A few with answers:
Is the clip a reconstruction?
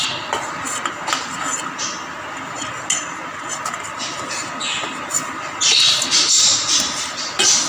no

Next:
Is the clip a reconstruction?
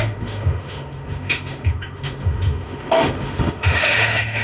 yes